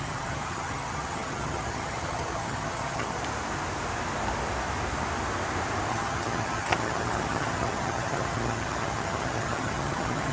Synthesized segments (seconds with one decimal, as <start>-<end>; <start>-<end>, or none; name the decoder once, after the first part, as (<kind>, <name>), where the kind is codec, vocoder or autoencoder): 0.0-3.2 (vocoder, HiFi-GAN); 5.9-10.3